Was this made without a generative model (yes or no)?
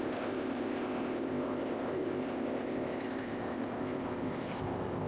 no